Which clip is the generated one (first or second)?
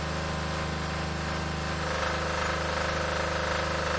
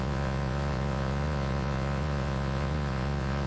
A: second